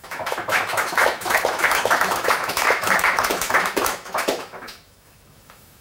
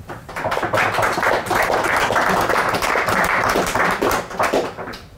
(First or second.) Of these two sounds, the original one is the second